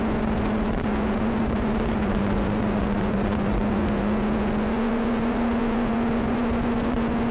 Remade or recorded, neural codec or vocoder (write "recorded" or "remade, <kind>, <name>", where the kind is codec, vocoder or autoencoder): remade, vocoder, Vocos